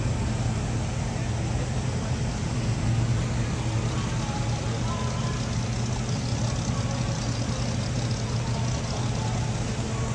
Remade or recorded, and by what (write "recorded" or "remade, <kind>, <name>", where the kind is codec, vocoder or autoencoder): recorded